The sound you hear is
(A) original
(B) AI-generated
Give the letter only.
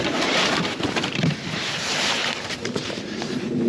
B